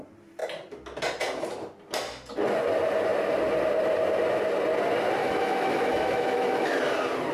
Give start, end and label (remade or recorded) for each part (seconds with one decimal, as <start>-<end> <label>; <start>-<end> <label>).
0.0-5.2 recorded; 5.2-6.8 remade; 6.8-7.3 recorded